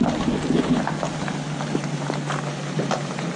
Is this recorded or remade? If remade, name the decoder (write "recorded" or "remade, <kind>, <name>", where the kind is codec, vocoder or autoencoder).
recorded